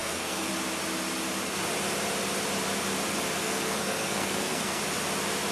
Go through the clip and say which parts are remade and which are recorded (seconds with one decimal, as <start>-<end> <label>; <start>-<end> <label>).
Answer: 0.0-0.5 remade; 0.5-3.4 recorded; 3.4-4.8 remade; 4.8-5.5 recorded